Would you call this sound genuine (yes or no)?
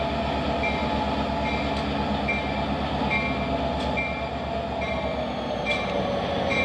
yes